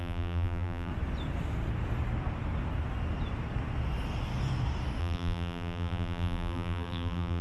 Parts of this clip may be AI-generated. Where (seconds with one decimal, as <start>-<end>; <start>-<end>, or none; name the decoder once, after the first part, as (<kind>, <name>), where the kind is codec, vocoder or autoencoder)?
0.0-0.9 (vocoder, BigVGAN v2); 5.0-7.4